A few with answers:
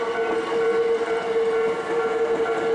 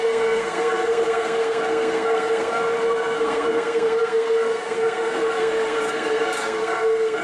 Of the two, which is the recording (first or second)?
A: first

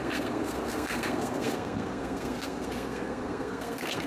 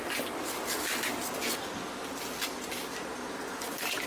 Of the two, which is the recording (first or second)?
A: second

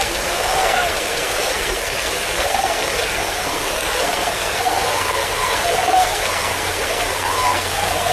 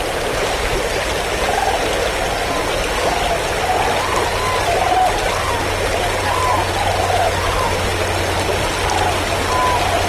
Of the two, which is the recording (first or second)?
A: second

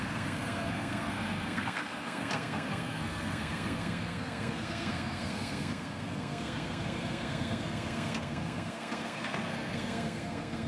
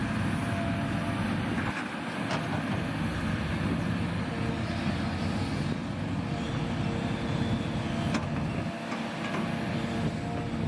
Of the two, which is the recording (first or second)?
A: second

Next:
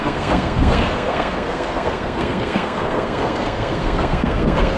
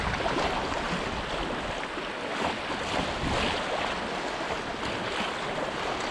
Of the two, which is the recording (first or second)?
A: second